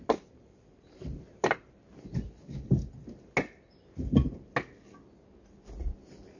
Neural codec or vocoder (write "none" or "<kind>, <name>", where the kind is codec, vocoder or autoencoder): none